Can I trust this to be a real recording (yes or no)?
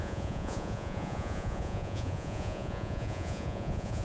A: no